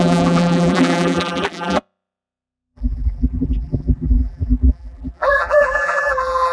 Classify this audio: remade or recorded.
remade